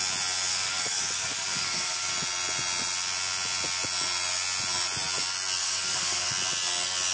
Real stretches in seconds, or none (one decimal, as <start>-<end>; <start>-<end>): 0.0-0.5; 2.1-5.6; 6.3-7.1